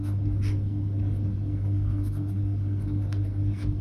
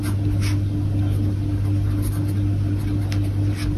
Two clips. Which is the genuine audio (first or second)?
second